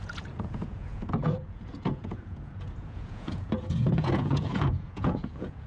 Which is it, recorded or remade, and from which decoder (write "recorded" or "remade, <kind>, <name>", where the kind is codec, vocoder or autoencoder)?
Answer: remade, vocoder, Vocos